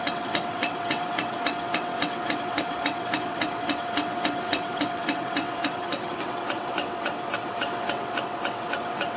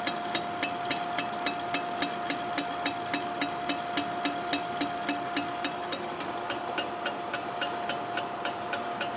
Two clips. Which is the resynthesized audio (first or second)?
first